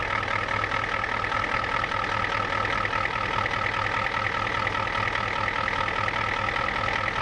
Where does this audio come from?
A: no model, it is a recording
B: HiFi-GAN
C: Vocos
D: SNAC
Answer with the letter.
A